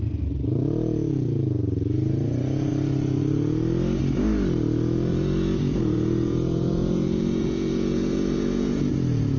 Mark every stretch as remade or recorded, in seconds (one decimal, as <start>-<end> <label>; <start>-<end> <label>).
0.0-5.1 recorded; 5.1-8.9 remade; 8.9-9.4 recorded